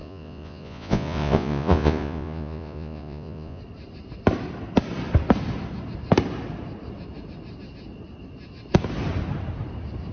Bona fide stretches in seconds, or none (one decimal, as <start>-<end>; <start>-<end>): 3.6-10.1